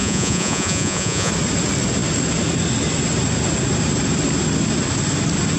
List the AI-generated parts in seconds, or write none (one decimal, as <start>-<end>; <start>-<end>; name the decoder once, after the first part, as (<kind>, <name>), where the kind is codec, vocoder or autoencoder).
0.0-1.3 (vocoder, Vocos)